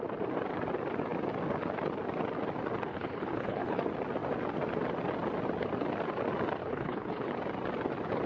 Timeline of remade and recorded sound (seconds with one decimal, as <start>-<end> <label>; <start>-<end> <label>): 0.0-2.9 recorded; 2.9-3.8 remade; 3.8-6.6 recorded; 6.6-7.3 remade; 7.3-8.3 recorded